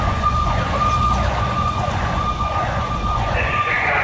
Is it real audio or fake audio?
fake